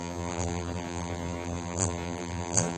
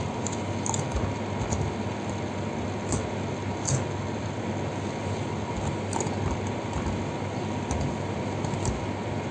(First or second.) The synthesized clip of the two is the first